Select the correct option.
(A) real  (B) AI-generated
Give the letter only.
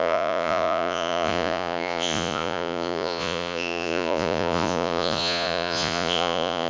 B